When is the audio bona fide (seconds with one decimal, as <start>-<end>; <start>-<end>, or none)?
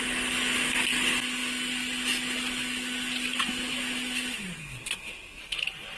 0.0-4.6; 5.4-6.0